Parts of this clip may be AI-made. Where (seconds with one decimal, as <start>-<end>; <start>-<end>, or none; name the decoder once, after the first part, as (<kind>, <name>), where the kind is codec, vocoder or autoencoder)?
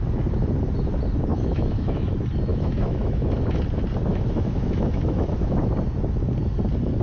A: 1.3-2.1 (autoencoder, DAC-VAE); 2.5-3.3; 4.1-5.7